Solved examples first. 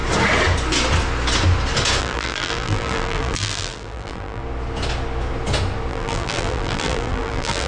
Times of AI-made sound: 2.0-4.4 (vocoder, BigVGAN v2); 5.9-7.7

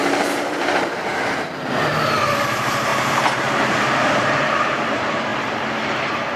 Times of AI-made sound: 0.0-6.4 (vocoder, BigVGAN v2)

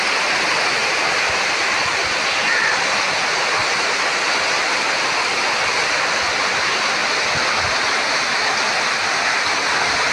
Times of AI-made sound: 0.8-1.6 (vocoder, BigVGAN v2)

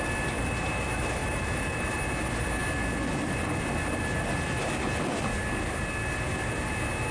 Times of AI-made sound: 1.2-1.9 (vocoder, BigVGAN v2)

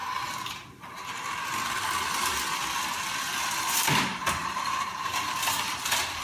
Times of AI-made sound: 3.7-6.2 (vocoder, BigVGAN v2)

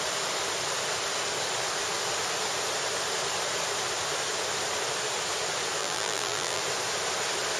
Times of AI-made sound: 5.8-6.6 (vocoder, BigVGAN v2)